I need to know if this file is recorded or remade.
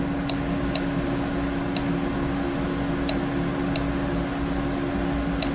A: recorded